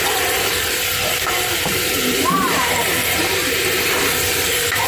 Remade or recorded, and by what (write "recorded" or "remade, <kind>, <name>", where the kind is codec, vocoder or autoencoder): remade, vocoder, BigVGAN v2